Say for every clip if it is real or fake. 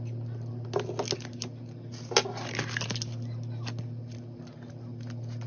real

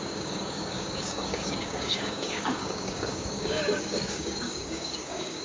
fake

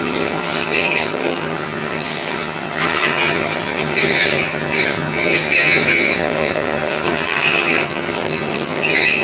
fake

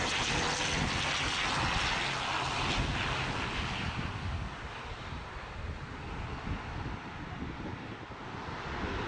real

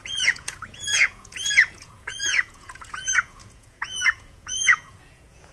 fake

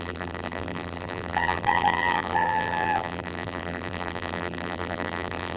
fake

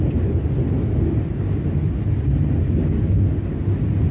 real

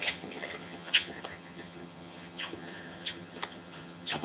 fake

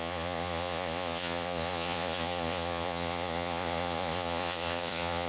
fake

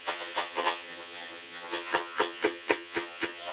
fake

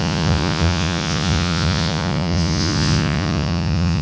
fake